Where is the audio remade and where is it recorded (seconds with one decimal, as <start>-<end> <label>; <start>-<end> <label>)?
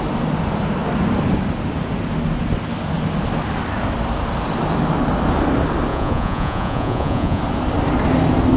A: 0.0-5.9 recorded; 5.9-7.4 remade; 7.4-8.6 recorded